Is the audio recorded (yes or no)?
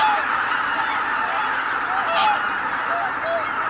yes